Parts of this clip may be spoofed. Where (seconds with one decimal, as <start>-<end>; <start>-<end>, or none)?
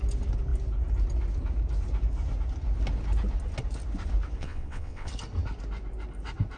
4.4-5.1